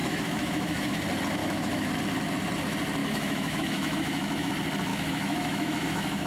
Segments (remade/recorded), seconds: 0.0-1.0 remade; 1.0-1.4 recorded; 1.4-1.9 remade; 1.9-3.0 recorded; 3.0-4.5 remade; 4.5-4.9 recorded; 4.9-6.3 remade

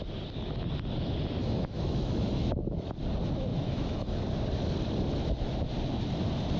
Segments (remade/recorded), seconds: 0.0-1.4 recorded; 1.4-2.9 remade; 2.9-3.5 recorded; 3.5-4.2 remade; 4.2-6.6 recorded

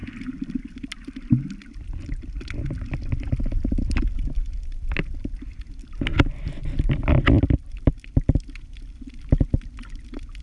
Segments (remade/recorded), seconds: 0.0-10.4 recorded

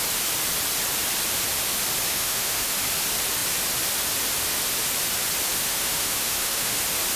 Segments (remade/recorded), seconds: 0.0-2.1 recorded; 2.1-2.7 remade; 2.7-5.6 recorded; 5.6-6.8 remade; 6.8-7.2 recorded

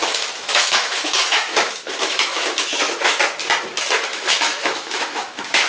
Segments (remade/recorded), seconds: 0.0-3.2 remade; 3.2-4.1 recorded; 4.1-5.7 remade

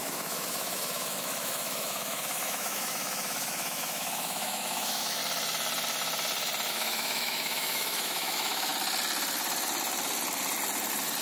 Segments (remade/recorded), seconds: 0.0-5.2 remade; 5.2-6.7 recorded; 6.7-8.7 remade; 8.7-11.2 recorded